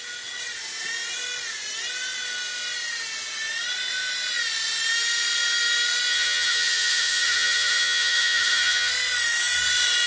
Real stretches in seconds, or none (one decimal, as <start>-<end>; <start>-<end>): 0.0-6.1; 8.9-10.1